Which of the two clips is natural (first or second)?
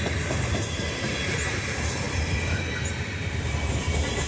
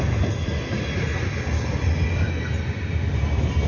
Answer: second